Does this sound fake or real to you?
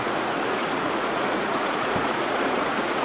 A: fake